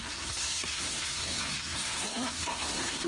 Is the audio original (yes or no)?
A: no